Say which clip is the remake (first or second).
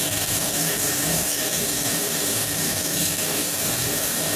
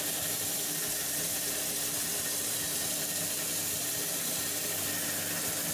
first